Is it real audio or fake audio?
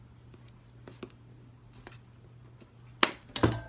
real